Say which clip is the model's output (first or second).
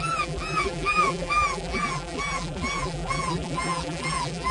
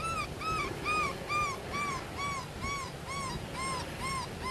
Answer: first